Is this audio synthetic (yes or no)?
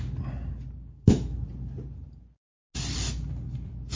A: no